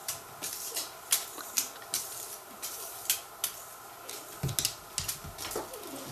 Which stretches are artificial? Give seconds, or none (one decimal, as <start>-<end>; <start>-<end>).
0.0-3.3